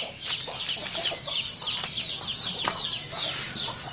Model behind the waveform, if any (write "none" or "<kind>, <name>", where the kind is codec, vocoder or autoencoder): vocoder, BigVGAN v2